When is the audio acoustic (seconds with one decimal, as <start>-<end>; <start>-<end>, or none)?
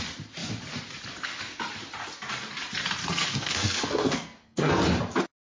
0.0-3.0; 4.8-5.6